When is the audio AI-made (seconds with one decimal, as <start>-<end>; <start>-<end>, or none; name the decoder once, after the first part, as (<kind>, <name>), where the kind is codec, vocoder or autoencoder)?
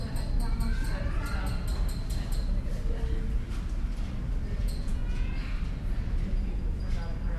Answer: 4.6-5.3 (vocoder, Vocos)